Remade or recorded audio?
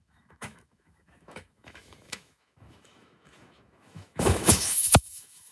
remade